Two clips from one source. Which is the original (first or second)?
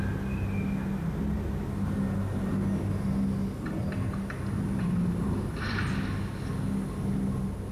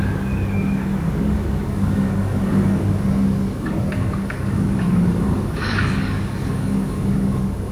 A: first